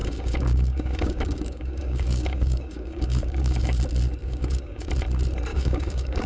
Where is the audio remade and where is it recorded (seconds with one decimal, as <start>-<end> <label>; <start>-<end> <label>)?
0.0-3.8 remade; 3.8-4.2 recorded; 4.2-4.9 remade; 4.9-5.5 recorded; 5.5-6.3 remade